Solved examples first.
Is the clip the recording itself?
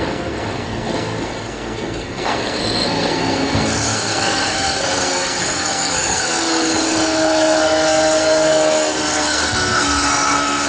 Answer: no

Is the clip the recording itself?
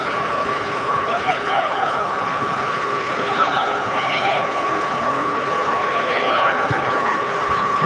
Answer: no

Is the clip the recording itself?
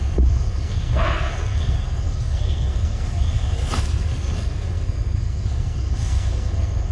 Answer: no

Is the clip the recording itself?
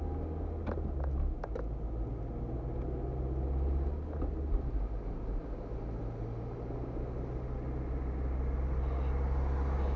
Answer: yes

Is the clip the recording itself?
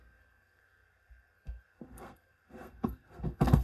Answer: no